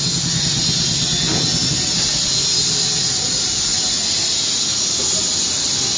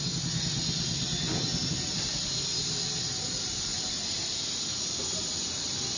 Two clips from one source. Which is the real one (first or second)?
first